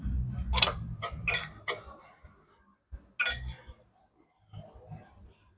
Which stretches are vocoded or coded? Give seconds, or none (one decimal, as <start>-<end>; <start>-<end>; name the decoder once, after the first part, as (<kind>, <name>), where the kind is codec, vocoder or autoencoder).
none